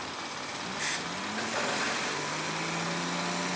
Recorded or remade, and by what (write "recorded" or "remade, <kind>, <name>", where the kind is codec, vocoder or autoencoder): recorded